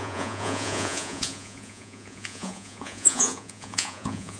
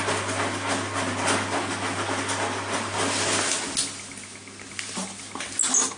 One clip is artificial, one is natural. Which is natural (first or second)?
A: second